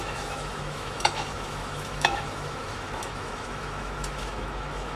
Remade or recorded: remade